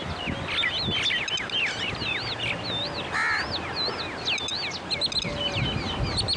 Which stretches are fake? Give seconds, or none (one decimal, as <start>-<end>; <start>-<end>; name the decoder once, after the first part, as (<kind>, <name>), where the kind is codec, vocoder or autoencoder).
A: none